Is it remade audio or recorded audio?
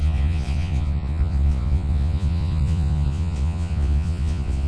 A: remade